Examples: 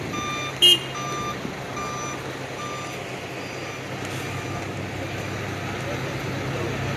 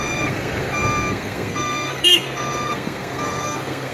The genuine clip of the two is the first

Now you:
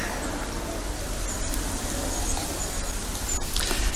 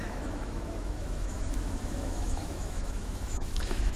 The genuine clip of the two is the first